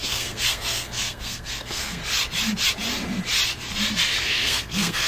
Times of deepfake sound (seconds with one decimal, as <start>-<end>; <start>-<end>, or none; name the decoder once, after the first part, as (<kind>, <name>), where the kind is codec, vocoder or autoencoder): 0.0-2.0 (codec, SNAC); 4.2-5.1